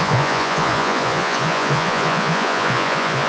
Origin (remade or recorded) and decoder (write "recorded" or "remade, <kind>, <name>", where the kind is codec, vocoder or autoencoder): remade, vocoder, Vocos